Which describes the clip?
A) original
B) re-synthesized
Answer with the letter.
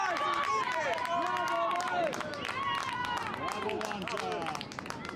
A